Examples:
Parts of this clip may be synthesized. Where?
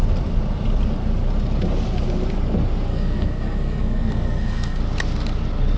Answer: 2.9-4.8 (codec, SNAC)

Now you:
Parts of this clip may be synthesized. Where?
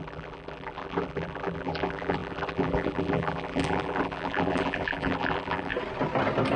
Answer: 0.0-5.7 (vocoder, BigVGAN v2)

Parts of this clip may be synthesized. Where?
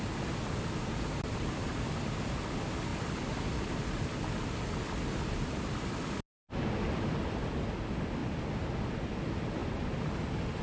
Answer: none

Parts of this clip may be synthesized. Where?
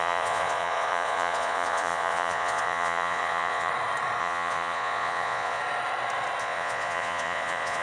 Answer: 0.0-3.7 (vocoder, Vocos); 4.2-5.6; 6.4-7.8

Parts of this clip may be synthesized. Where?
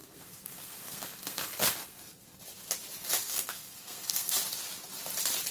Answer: 0.0-2.4 (codec, SNAC); 3.2-4.4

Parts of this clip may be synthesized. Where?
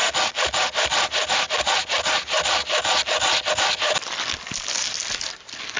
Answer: none